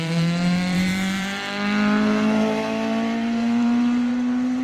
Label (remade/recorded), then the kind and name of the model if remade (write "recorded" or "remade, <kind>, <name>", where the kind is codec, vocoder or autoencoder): remade, vocoder, BigVGAN v2